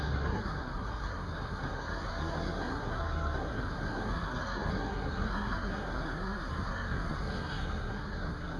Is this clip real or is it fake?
fake